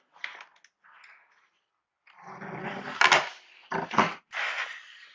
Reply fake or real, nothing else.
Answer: real